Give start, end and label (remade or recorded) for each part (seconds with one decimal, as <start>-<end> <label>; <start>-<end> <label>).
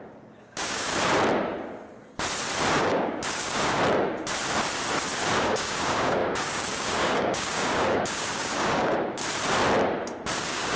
0.0-0.9 remade; 0.9-2.8 recorded; 2.8-3.8 remade; 3.8-5.4 recorded; 5.4-9.2 remade; 9.2-10.4 recorded; 10.4-10.8 remade